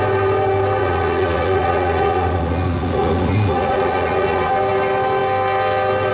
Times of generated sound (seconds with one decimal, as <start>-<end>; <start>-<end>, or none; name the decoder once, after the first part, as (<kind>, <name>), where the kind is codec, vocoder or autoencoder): 0.8-4.5 (vocoder, Vocos)